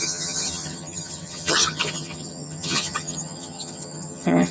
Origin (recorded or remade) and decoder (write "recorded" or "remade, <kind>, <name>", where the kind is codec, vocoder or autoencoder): remade, vocoder, HiFi-GAN